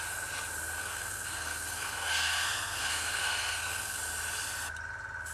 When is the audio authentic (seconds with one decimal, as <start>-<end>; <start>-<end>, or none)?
0.0-0.8; 4.0-5.3